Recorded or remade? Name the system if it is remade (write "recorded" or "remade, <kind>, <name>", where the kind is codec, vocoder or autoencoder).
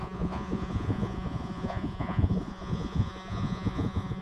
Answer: remade, vocoder, Vocos